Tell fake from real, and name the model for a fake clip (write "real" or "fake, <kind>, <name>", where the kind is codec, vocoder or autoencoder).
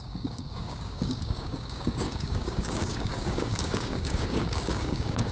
fake, codec, DAC